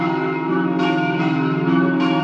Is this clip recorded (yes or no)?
no